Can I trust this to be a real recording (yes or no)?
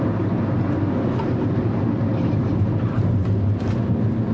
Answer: yes